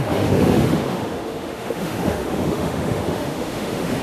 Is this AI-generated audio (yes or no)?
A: yes